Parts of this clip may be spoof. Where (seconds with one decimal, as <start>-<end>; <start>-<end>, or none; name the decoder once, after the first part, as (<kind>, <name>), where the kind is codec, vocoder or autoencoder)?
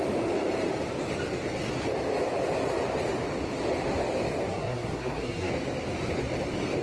4.5-5.5 (codec, SNAC)